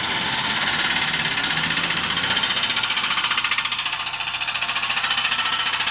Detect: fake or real real